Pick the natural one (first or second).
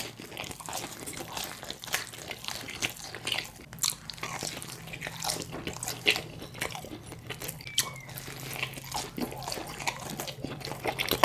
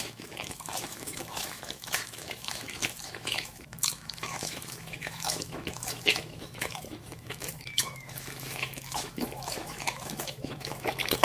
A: first